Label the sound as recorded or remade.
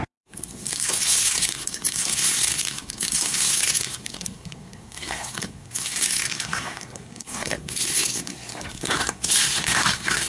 remade